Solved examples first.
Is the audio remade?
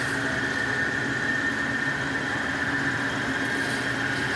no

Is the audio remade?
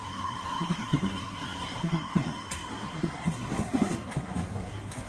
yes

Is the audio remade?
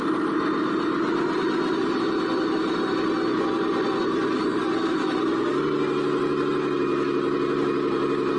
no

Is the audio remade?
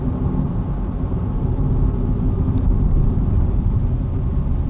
no